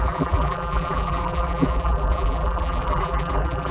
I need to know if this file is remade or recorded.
remade